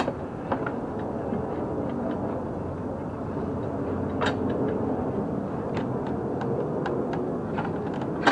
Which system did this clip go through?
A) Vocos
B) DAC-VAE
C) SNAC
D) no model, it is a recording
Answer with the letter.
D